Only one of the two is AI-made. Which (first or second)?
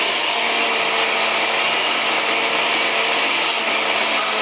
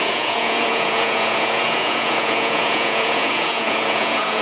second